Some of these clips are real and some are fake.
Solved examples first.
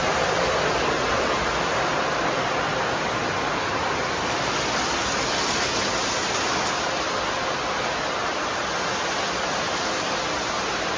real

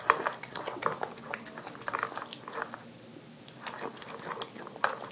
real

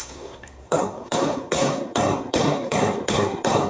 fake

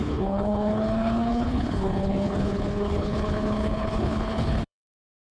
fake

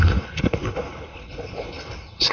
fake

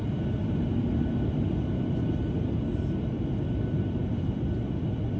real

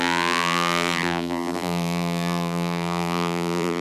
fake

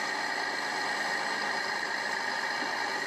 real